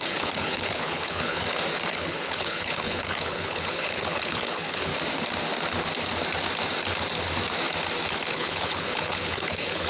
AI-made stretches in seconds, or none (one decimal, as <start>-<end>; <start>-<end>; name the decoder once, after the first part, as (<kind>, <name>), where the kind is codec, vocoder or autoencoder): 0.0-1.4 (codec, HILCodec); 1.9-4.9; 8.3-9.9